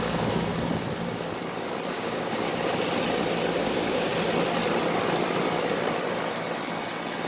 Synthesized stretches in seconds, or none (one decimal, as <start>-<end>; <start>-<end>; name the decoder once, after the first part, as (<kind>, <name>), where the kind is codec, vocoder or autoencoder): 0.0-0.5 (codec, DAC); 1.9-2.5; 3.6-4.1